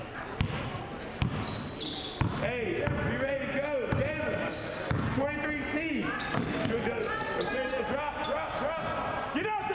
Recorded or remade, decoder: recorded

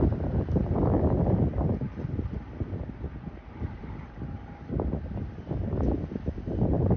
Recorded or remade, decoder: remade, vocoder, BigVGAN v2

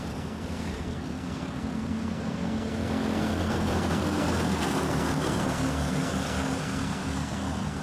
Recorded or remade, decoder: remade, codec, SNAC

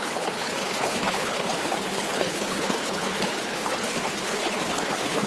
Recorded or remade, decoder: remade, codec, HILCodec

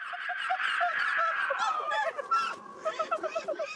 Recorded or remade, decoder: recorded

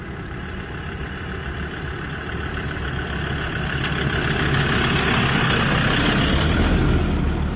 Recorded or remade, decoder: recorded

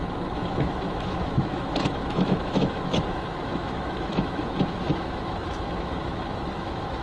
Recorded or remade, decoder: remade, autoencoder, DAC-VAE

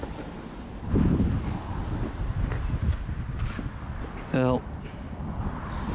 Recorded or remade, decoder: recorded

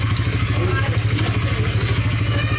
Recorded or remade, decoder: remade, codec, DAC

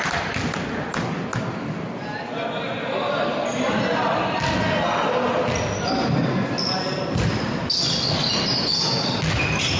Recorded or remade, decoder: recorded